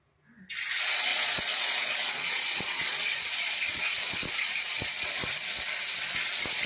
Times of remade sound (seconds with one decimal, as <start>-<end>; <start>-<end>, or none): 1.1-5.1